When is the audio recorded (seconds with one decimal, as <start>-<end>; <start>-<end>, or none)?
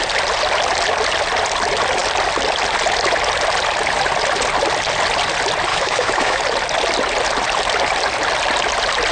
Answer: 0.0-5.7; 6.4-9.1